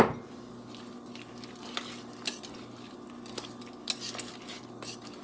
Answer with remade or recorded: recorded